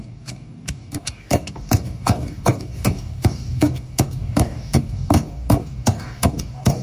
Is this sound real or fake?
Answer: fake